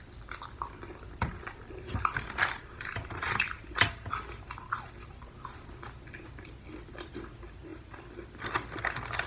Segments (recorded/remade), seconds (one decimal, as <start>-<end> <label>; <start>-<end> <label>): 0.0-9.3 recorded